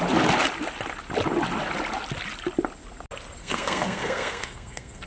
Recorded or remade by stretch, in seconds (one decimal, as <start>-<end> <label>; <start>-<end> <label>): 0.0-3.4 recorded; 3.4-5.1 remade